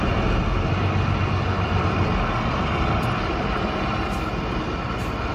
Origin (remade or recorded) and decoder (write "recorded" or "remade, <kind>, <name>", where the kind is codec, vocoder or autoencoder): remade, vocoder, BigVGAN v2